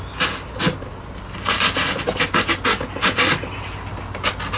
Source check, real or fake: real